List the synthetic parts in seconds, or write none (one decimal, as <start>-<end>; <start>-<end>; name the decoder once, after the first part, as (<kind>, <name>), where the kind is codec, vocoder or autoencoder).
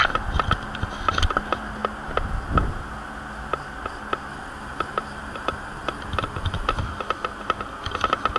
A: 4.3-6.8 (vocoder, BigVGAN v2)